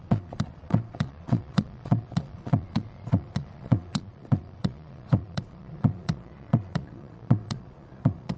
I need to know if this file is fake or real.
fake